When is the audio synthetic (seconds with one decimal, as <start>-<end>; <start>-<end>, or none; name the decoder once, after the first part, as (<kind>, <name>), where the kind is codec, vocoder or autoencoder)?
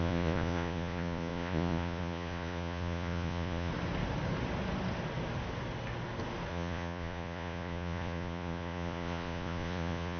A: 0.0-3.7 (vocoder, Vocos); 6.5-10.2